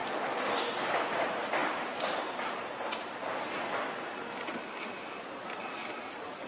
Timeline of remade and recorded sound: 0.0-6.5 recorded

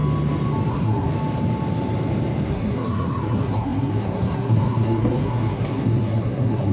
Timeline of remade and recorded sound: 0.0-0.7 recorded; 0.7-1.1 remade; 1.1-2.5 recorded; 2.5-6.7 remade

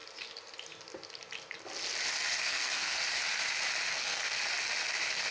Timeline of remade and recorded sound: 0.0-2.4 recorded; 2.4-3.0 remade; 3.0-3.9 recorded; 3.9-4.4 remade; 4.4-5.3 recorded

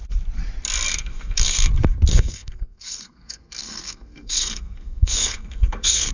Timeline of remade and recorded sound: 0.0-0.9 recorded; 0.9-1.7 remade; 1.7-2.1 recorded; 2.1-6.1 remade

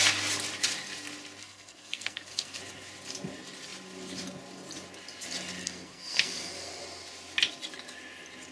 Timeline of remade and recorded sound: 0.0-1.4 recorded; 1.4-2.6 remade; 2.6-5.6 recorded; 5.6-6.8 remade; 6.8-8.5 recorded